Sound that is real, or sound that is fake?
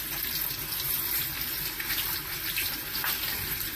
real